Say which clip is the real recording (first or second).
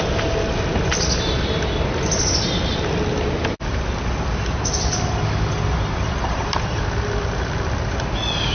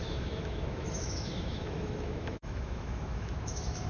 first